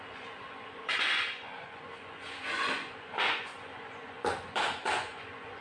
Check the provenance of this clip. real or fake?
fake